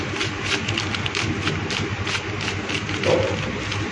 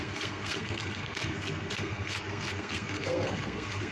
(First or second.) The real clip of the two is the first